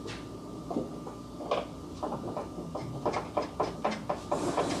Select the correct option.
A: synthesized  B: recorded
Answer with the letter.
B